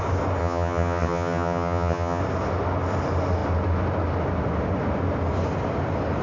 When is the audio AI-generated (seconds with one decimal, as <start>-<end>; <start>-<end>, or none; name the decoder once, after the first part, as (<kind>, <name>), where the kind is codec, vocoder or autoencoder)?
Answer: 0.4-2.2 (vocoder, HiFi-GAN)